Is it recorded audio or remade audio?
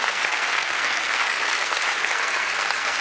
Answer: remade